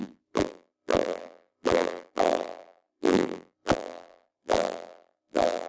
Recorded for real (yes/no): no